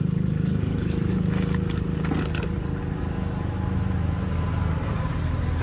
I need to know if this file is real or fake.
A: real